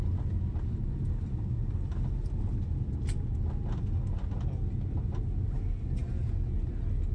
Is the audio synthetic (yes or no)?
no